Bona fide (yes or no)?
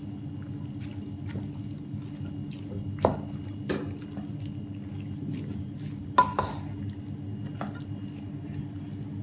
yes